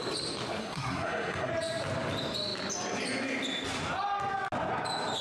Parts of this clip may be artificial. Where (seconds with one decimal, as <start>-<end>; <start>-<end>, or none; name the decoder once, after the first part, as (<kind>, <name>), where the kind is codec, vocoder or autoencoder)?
0.6-1.5 (codec, SNAC)